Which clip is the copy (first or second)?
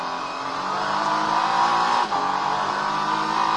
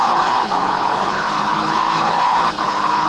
second